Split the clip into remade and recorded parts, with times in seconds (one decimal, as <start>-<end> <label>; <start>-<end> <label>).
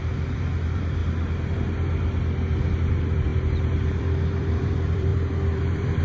0.0-1.0 remade; 1.0-2.9 recorded; 2.9-3.3 remade; 3.3-4.0 recorded; 4.0-6.0 remade